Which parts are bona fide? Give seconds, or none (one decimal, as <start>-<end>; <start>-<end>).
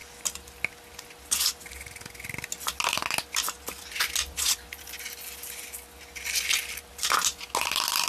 0.0-8.1